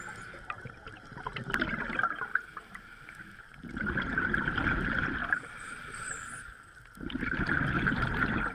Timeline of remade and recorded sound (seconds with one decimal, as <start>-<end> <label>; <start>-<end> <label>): 0.0-5.2 recorded; 5.2-6.0 remade; 6.0-8.5 recorded